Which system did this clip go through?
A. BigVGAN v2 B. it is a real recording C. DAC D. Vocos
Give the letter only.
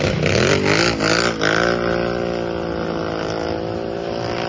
B